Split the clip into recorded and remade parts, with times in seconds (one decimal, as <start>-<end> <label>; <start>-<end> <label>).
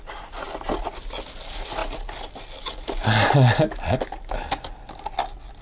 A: 0.0-5.6 recorded